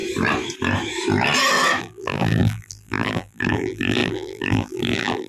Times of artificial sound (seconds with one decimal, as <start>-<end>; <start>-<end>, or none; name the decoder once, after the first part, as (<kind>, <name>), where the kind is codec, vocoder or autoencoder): 1.8-5.3 (vocoder, BigVGAN v2)